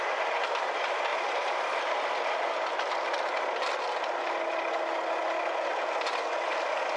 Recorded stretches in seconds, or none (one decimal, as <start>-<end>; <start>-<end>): 0.0-1.1; 2.0-7.0